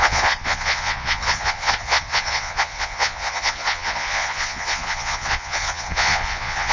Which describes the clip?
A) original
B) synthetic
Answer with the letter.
B